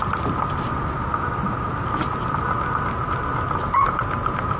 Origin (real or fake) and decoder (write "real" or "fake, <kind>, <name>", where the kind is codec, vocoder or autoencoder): real